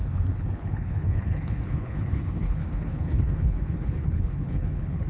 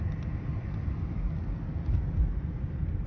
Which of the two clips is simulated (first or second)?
first